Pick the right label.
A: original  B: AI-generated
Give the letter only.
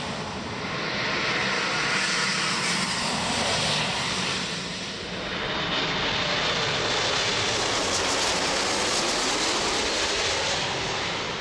A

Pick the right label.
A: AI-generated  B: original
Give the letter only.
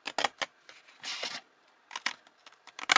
B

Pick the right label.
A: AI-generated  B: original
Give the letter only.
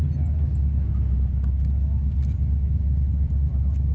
B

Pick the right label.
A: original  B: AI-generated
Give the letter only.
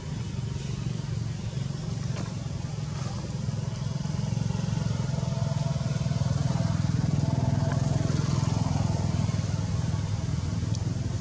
A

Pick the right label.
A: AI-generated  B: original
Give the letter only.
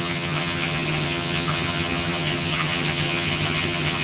A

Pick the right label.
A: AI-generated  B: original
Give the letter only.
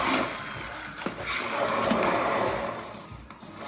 B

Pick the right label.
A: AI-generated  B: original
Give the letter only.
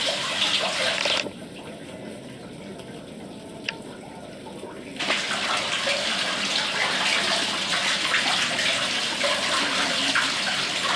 B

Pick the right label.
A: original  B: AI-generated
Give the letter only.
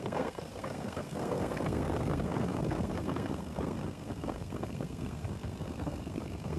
B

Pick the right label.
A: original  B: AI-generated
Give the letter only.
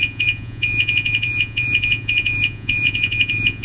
B